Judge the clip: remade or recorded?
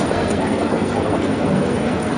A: remade